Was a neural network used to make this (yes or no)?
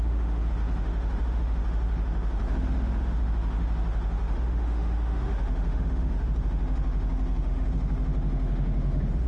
yes